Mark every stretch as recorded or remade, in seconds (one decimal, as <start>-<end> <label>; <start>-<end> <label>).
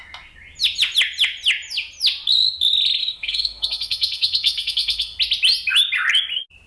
0.0-3.0 recorded; 3.0-5.2 remade; 5.2-6.7 recorded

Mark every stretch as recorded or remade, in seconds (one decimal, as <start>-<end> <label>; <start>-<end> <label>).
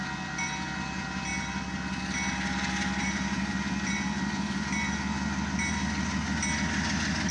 0.0-7.3 recorded